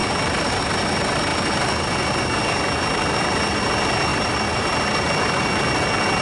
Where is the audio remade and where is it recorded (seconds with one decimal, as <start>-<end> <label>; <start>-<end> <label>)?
0.0-4.1 recorded; 4.1-4.6 remade; 4.6-6.2 recorded